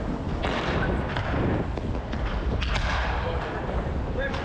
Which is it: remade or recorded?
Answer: recorded